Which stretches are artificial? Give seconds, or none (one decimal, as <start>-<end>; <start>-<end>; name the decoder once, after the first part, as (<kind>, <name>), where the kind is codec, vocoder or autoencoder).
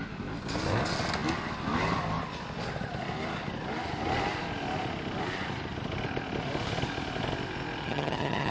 7.8-8.5 (vocoder, HiFi-GAN)